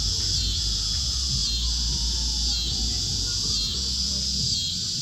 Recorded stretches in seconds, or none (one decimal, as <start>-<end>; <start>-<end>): 0.0-5.0